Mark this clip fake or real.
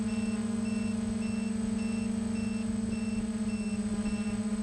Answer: real